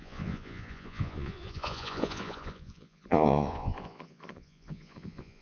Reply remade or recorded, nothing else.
remade